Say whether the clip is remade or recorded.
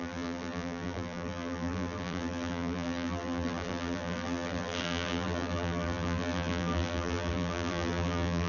remade